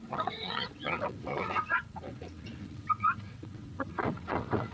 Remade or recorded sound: remade